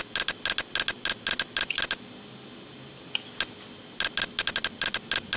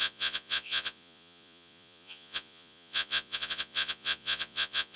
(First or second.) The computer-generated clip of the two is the second